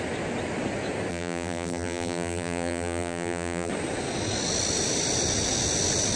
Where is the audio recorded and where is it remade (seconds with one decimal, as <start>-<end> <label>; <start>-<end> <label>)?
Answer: 0.0-1.1 recorded; 1.1-3.7 remade; 3.7-6.2 recorded